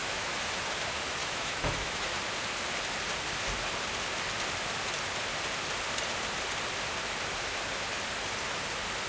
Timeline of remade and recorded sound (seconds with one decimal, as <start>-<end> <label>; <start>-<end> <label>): 0.0-0.6 remade; 0.6-1.2 recorded; 1.2-2.1 remade; 2.1-9.1 recorded